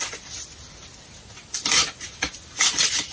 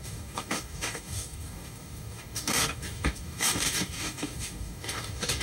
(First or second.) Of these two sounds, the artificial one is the second